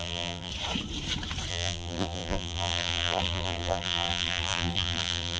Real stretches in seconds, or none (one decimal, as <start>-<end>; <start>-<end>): 0.5-1.5